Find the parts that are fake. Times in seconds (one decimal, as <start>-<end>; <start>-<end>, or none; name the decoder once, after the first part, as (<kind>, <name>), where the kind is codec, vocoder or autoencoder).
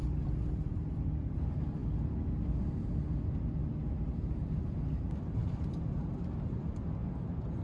none